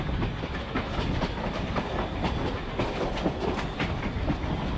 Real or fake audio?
real